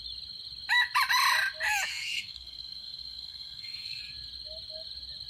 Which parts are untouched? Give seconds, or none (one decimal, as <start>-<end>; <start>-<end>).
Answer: 0.0-1.9; 4.0-5.3